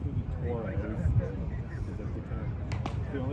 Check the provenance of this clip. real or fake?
real